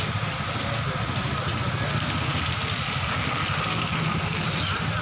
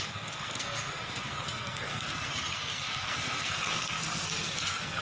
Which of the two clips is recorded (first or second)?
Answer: first